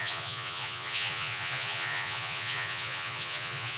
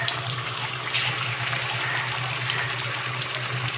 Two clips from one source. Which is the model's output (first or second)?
first